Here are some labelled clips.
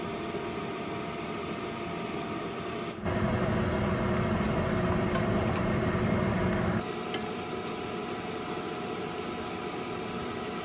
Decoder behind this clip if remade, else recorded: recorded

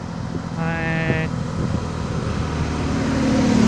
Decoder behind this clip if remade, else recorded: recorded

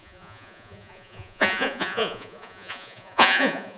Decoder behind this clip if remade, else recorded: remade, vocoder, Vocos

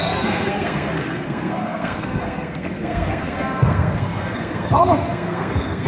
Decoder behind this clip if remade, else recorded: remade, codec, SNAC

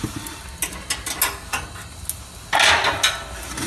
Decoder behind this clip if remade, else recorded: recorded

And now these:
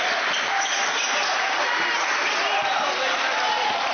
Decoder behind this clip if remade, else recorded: recorded